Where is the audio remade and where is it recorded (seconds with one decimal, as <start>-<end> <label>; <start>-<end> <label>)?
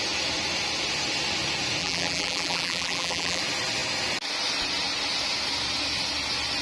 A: 0.0-1.8 recorded; 1.8-3.4 remade; 3.4-6.6 recorded